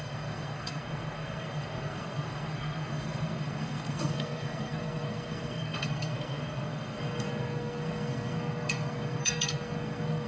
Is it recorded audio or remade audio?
remade